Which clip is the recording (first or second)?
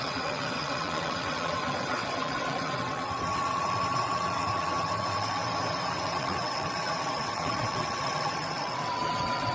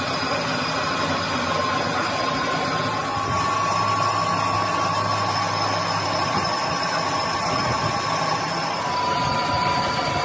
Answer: second